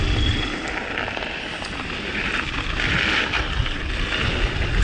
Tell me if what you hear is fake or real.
real